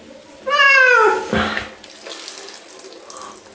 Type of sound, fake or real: real